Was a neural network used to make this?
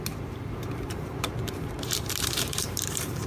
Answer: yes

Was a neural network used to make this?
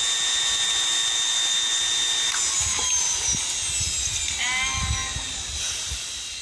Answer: no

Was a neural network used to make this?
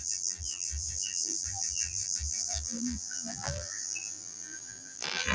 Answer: yes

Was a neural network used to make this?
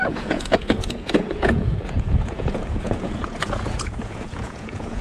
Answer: yes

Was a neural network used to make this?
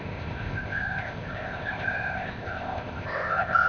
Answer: yes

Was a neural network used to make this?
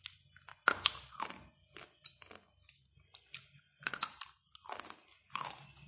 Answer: no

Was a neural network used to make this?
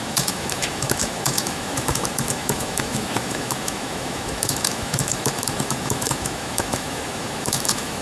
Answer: yes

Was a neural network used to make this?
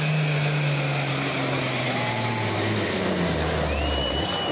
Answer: no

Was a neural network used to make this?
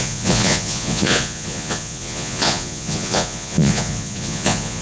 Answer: yes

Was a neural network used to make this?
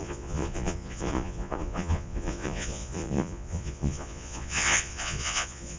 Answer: yes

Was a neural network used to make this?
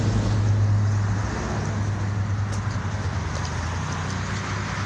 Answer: no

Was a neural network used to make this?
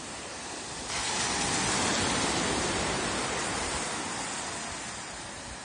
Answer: no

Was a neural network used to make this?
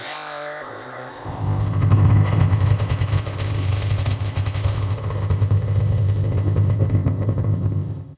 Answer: yes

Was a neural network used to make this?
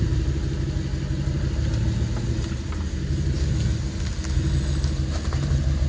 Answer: no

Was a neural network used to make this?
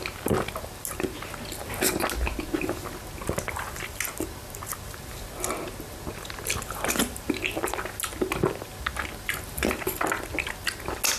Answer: no